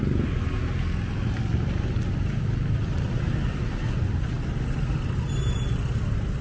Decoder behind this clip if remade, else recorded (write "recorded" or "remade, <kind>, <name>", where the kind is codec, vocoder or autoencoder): recorded